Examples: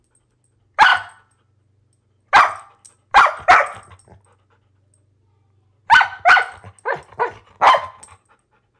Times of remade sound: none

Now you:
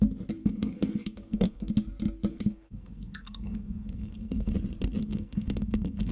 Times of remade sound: 0.4-1.7 (codec, SNAC); 2.3-4.5; 5.0-6.1

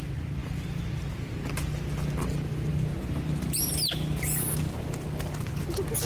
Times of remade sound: 2.7-3.6 (vocoder, BigVGAN v2)

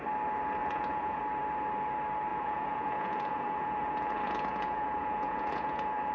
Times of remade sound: 0.6-1.2 (vocoder, Vocos); 2.3-6.1

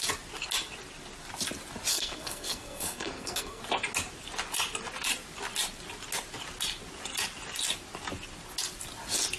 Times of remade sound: 1.9-3.6 (codec, SNAC)